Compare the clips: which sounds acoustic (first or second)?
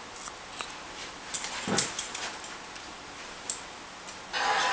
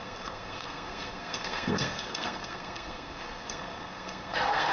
first